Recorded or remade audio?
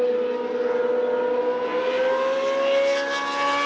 recorded